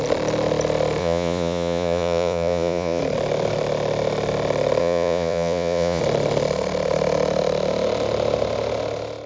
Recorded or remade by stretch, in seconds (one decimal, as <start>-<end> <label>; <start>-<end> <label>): 0.0-1.0 recorded; 1.0-3.0 remade; 3.0-4.8 recorded; 4.8-6.0 remade; 6.0-9.3 recorded